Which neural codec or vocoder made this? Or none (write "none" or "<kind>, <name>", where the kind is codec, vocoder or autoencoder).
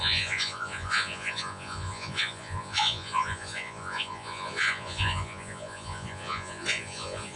vocoder, Vocos